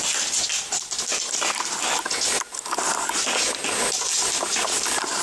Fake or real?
real